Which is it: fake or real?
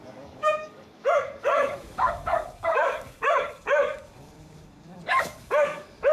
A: fake